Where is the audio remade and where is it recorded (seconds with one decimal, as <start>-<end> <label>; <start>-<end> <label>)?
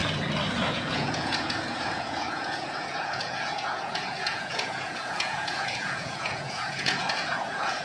0.0-0.7 recorded; 0.7-7.8 remade